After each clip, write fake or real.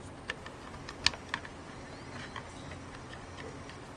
real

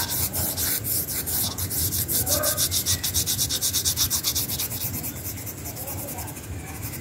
real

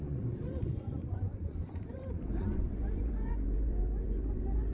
fake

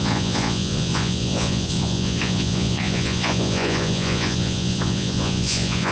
fake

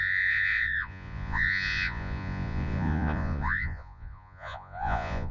fake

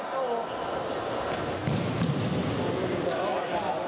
real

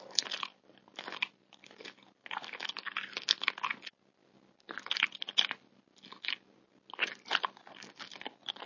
real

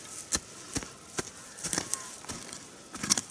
real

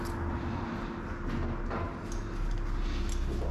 real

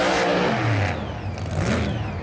real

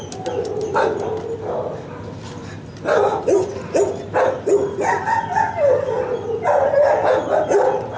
real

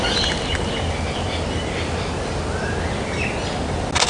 real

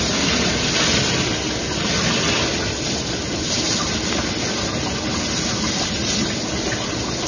real